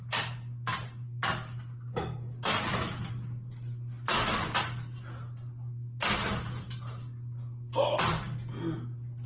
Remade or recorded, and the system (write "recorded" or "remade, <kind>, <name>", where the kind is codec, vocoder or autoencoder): recorded